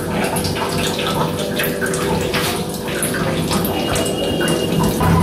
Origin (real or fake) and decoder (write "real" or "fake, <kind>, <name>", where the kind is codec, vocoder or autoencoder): real